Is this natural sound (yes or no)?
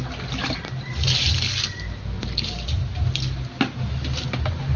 yes